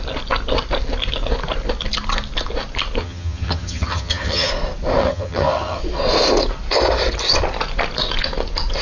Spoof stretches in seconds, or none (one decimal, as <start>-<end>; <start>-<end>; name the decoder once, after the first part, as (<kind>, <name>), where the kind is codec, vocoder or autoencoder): 3.0-4.5 (vocoder, HiFi-GAN); 5.0-5.8